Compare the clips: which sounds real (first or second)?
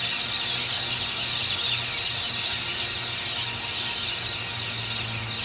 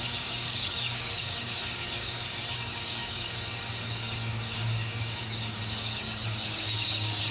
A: first